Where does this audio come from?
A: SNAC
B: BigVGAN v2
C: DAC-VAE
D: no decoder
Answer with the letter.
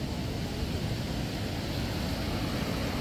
D